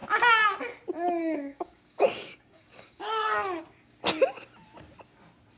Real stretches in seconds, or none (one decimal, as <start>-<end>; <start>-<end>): 0.0-1.2; 3.6-5.6